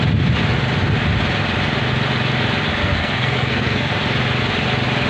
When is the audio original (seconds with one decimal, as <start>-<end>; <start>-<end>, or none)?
0.0-2.8; 3.9-5.1

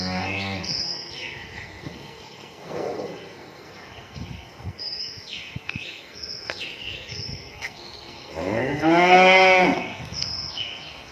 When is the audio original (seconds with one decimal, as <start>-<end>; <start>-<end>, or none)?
none